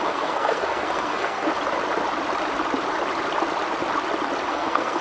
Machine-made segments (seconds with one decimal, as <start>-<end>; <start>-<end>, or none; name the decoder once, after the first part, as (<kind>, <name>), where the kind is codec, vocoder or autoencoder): 0.0-1.5 (codec, SNAC); 4.5-5.0